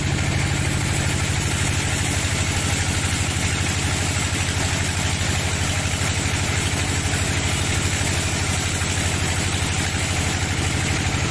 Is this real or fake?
real